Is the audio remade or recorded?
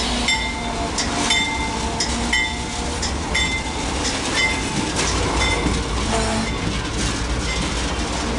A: recorded